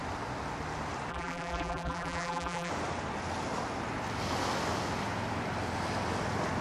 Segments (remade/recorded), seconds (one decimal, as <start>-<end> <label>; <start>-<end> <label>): 0.0-1.1 recorded; 1.1-2.7 remade; 2.7-6.6 recorded